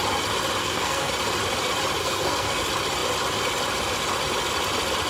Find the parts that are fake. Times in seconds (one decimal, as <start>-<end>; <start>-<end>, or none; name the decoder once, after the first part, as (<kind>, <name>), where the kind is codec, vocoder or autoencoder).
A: 0.6-1.1 (codec, SNAC); 2.0-2.6